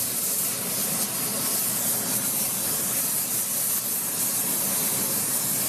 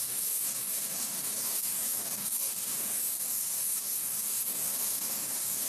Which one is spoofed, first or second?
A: second